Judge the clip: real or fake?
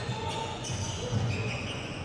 fake